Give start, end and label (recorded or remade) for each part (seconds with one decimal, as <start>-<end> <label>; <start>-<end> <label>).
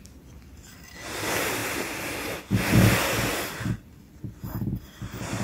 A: 0.0-5.4 recorded